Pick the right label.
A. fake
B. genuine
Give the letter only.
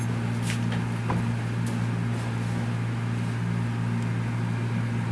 B